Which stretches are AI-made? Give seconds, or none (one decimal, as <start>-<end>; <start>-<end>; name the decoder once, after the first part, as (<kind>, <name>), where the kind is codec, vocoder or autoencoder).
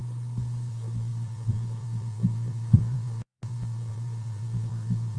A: 0.7-5.2 (vocoder, Vocos)